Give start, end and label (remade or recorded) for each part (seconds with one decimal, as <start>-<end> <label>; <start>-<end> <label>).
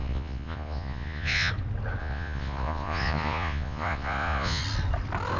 0.0-1.5 remade; 1.5-2.0 recorded; 2.0-4.6 remade; 4.6-5.4 recorded